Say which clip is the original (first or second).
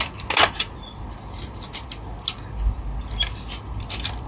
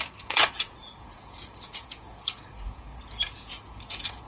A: first